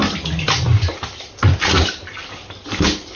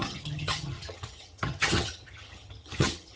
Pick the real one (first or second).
first